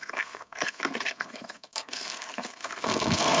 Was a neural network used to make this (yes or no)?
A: yes